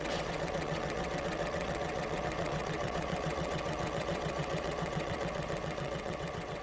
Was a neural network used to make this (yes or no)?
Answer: yes